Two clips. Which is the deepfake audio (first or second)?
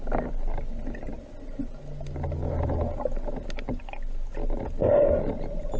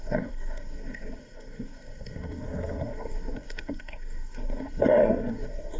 second